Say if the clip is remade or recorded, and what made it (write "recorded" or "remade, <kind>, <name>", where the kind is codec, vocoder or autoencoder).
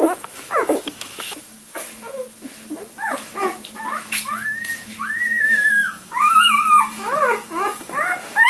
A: remade, autoencoder, DAC-VAE